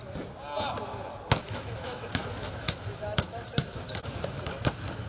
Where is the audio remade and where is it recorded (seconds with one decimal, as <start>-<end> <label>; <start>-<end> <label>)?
0.0-1.4 recorded; 1.4-4.4 remade; 4.4-5.1 recorded